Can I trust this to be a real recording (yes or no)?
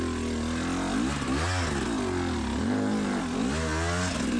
yes